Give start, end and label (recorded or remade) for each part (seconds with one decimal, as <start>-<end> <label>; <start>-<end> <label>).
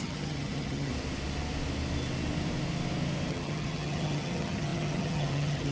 0.0-0.9 remade; 0.9-3.3 recorded; 3.3-5.7 remade